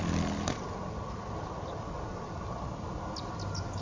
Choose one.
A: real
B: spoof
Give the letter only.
A